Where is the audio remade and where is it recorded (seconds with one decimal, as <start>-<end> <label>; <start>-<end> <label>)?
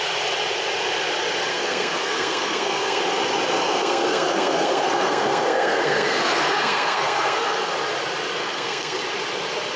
0.0-1.5 recorded; 1.5-3.0 remade; 3.0-3.6 recorded; 3.6-7.7 remade; 7.7-8.4 recorded; 8.4-9.0 remade; 9.0-9.8 recorded